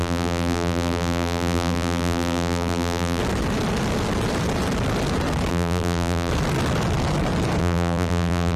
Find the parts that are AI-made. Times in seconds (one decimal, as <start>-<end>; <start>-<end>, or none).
0.0-3.2; 5.5-6.3; 7.6-8.6